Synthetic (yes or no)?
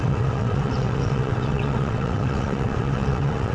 yes